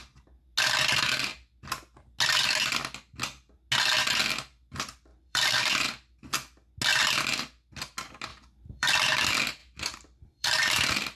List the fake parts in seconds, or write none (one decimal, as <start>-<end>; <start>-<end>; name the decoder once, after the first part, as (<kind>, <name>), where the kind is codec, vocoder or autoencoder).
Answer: 5.1-5.8 (vocoder, BigVGAN v2); 8.3-8.9; 9.6-11.2